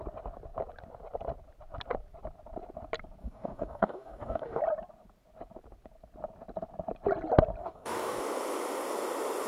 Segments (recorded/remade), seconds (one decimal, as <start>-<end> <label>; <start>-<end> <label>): 0.0-3.2 recorded; 3.2-4.6 remade; 4.6-7.6 recorded; 7.6-8.2 remade; 8.2-9.5 recorded